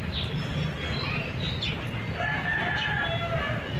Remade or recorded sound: recorded